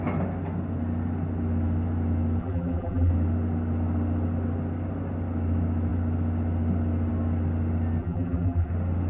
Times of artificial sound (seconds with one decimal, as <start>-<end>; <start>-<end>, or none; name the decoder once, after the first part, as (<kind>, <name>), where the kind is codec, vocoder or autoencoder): 2.4-3.1 (vocoder, BigVGAN v2); 8.0-8.7